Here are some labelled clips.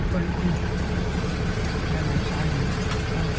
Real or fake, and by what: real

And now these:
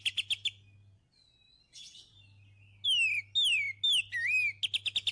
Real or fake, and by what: real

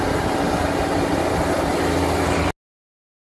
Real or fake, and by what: real